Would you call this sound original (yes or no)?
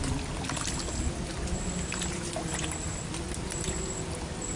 yes